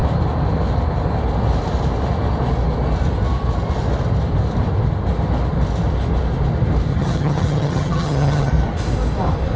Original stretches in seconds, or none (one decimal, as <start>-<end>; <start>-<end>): 0.0-6.9; 8.5-9.6